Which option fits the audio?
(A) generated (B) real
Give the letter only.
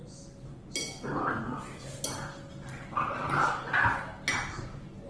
B